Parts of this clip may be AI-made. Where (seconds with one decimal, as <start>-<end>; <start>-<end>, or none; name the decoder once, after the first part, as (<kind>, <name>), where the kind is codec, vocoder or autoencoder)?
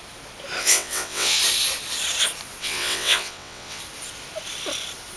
0.6-1.4 (vocoder, WaveNeXt); 2.6-3.8